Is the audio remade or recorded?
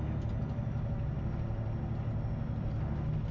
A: recorded